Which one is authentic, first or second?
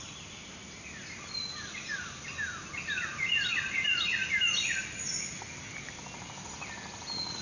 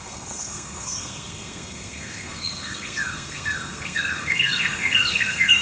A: first